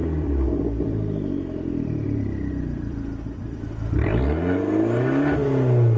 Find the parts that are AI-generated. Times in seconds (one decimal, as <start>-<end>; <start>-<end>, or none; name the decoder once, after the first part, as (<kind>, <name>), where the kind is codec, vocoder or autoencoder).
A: 0.0-3.6 (vocoder, BigVGAN v2)